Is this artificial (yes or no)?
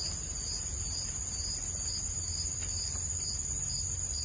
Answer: no